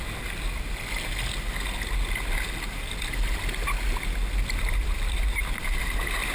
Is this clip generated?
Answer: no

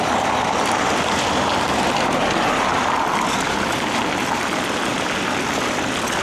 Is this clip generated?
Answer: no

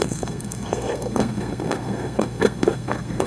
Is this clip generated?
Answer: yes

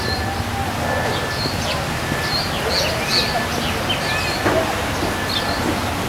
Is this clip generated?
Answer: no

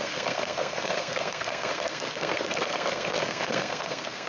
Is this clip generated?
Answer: yes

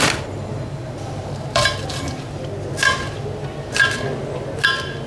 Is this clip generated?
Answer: no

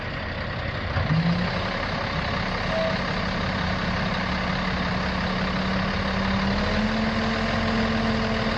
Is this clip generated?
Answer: no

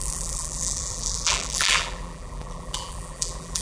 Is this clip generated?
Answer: yes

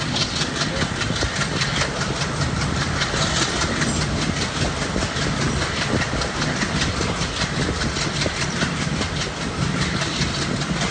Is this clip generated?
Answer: no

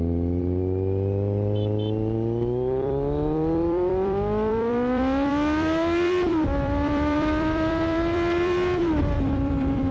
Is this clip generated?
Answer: yes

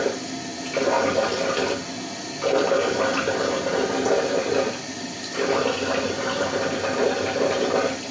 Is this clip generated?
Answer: no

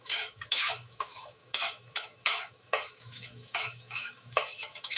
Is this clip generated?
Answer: yes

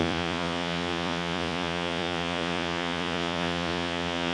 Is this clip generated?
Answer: yes